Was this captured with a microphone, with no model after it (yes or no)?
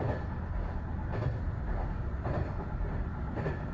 yes